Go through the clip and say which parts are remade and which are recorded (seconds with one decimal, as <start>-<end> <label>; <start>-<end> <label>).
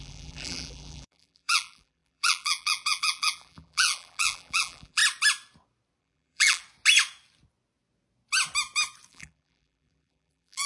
0.0-5.0 remade; 5.0-6.0 recorded; 6.0-6.6 remade; 6.6-9.1 recorded; 9.1-10.7 remade